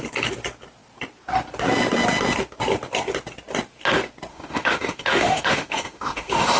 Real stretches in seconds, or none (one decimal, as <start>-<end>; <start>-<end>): 0.0-4.3